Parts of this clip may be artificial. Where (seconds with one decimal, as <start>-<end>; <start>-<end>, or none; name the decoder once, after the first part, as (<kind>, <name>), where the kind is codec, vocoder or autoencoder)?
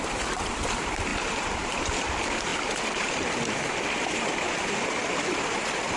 none